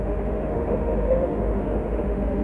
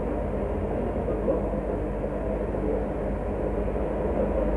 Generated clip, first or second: first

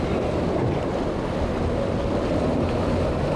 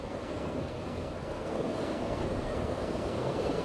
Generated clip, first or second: second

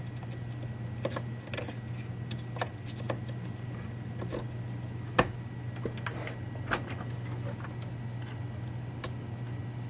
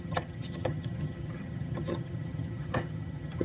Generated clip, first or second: second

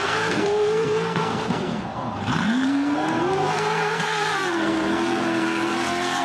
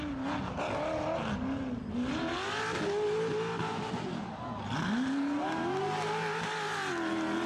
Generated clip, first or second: first